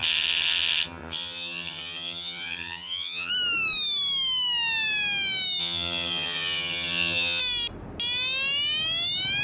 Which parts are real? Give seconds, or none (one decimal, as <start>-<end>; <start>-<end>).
3.3-5.6; 7.4-9.4